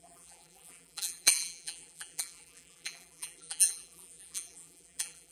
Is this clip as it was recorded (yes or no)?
no